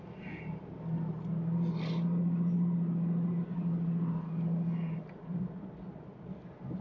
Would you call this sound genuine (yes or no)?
yes